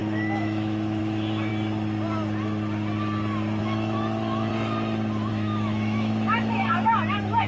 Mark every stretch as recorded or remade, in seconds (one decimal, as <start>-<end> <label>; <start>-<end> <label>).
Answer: 0.0-1.5 remade; 1.5-3.6 recorded; 3.6-4.5 remade; 4.5-5.3 recorded; 5.3-7.5 remade